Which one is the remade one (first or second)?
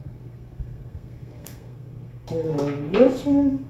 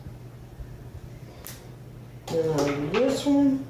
first